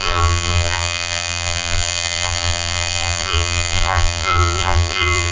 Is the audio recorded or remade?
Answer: remade